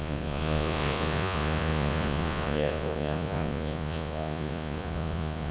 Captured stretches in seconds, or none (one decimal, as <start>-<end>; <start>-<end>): none